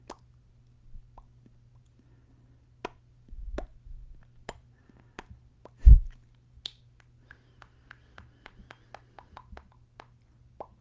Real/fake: real